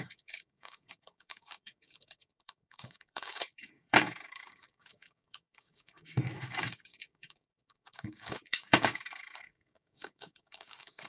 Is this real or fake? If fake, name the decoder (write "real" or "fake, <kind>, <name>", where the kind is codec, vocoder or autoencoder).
fake, codec, DAC